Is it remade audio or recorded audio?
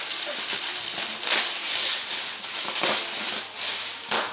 recorded